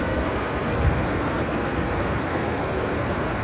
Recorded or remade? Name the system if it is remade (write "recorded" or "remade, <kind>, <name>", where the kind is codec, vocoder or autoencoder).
remade, codec, SNAC